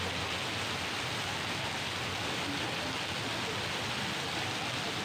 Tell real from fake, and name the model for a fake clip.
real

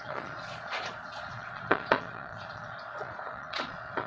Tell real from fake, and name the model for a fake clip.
fake, vocoder, Vocos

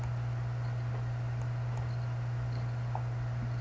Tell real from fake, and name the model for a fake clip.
real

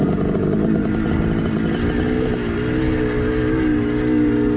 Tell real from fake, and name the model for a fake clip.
real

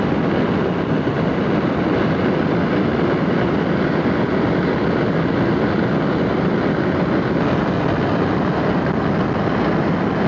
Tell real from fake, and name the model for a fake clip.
real